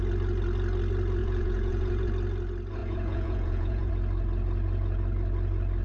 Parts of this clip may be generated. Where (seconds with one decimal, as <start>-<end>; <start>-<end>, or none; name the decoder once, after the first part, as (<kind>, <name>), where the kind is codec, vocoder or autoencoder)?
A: 1.2-2.1 (vocoder, Vocos); 2.8-3.9